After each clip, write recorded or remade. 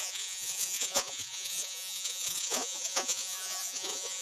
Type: remade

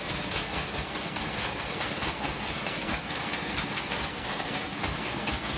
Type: remade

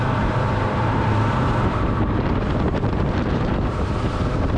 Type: remade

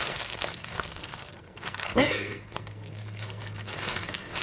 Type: remade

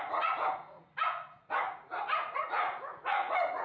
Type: remade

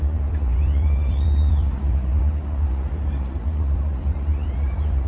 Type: remade